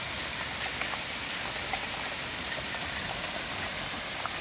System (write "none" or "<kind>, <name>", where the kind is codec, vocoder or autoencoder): none